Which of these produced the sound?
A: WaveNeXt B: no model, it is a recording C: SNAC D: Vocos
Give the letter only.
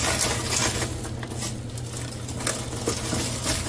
B